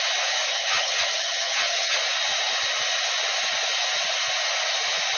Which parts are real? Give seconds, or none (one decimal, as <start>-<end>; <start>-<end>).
0.0-0.5; 2.0-5.2